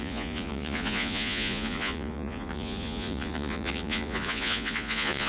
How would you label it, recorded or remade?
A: remade